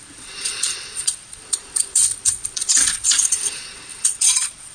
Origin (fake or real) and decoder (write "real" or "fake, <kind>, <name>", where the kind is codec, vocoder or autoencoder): fake, vocoder, Vocos